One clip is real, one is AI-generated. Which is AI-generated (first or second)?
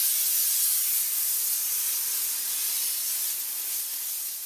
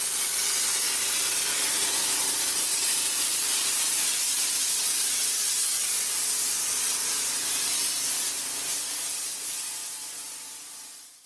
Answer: second